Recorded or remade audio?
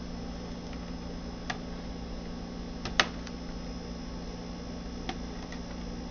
recorded